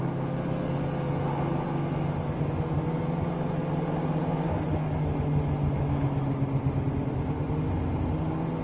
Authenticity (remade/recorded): recorded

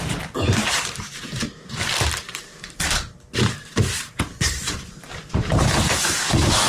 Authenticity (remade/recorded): remade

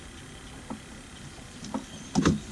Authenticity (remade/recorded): recorded